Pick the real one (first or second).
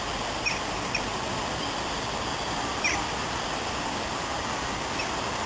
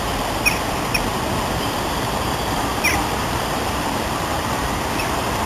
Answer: first